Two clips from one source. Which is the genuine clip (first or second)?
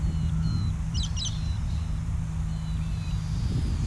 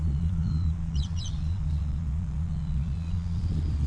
first